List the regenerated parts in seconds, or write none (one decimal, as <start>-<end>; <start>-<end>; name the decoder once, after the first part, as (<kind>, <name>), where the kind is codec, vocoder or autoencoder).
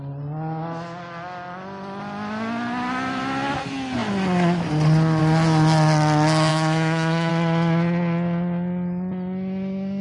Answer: 6.5-7.3 (autoencoder, DAC-VAE)